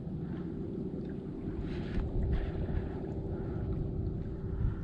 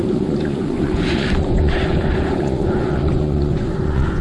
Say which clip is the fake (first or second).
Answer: second